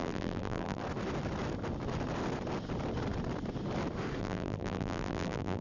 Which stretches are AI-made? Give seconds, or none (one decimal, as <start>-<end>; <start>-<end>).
0.0-0.8; 4.2-5.6